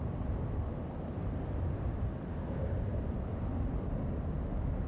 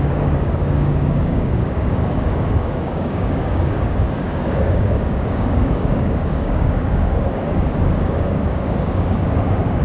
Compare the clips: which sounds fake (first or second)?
second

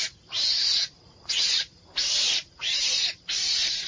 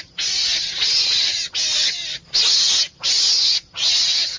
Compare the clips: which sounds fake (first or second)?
first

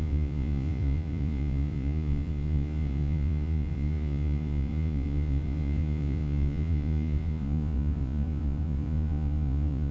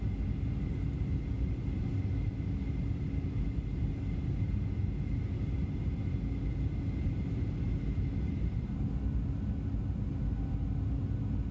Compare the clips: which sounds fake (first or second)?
first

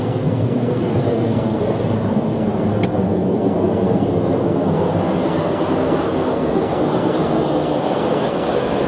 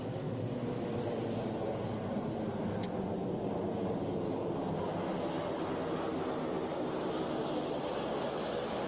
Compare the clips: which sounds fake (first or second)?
first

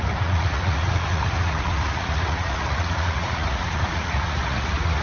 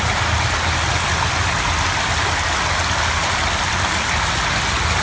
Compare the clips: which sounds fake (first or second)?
first